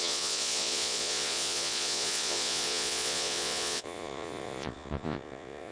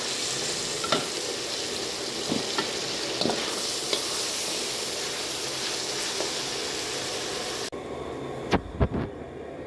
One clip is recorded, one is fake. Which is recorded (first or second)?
second